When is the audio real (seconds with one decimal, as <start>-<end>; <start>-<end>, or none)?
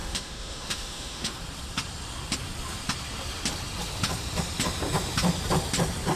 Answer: 1.3-6.2